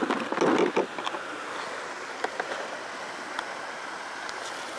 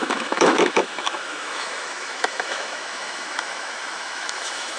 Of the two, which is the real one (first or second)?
first